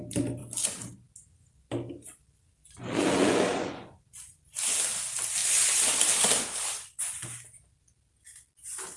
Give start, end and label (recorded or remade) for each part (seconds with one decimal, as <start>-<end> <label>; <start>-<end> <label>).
0.0-2.6 recorded; 2.6-4.0 remade; 4.0-9.0 recorded